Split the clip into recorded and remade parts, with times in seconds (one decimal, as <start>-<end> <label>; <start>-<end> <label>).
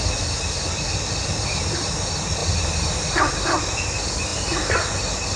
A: 0.0-5.4 recorded